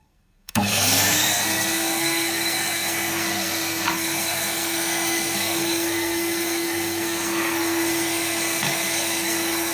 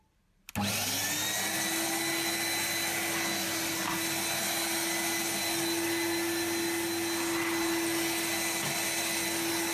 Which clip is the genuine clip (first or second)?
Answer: second